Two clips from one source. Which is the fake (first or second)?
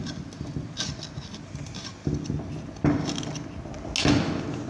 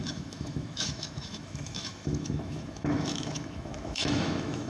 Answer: second